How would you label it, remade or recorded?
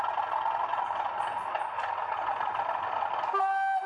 recorded